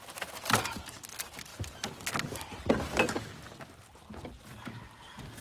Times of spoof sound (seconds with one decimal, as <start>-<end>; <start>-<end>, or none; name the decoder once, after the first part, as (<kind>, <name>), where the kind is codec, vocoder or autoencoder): none